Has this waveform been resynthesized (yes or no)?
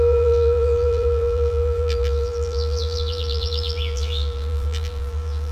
yes